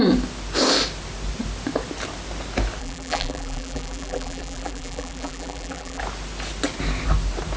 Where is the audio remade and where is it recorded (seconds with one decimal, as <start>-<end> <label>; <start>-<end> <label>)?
0.0-2.8 recorded; 2.8-6.0 remade; 6.0-7.6 recorded